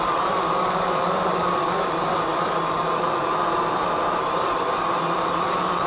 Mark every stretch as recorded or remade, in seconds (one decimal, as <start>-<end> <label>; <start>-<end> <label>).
0.0-5.9 remade